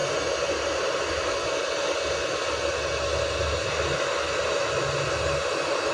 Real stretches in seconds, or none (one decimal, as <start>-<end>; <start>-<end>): 0.0-5.9